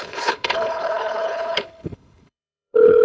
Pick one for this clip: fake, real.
fake